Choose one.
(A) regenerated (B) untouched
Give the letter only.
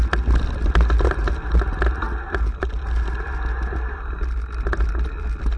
B